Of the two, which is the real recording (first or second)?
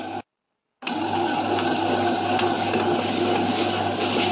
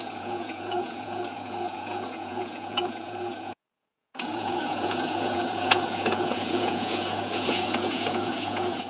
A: first